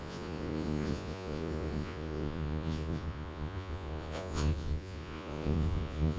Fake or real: fake